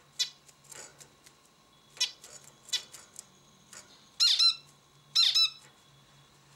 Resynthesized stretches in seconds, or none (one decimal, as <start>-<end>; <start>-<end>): none